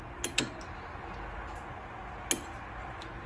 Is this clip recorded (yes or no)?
yes